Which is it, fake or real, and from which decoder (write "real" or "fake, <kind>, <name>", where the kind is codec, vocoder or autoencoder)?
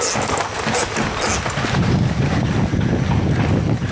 real